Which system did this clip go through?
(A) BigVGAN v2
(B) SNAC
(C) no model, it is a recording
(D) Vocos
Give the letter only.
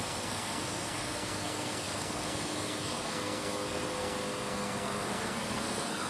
B